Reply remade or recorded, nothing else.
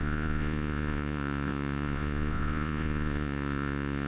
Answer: remade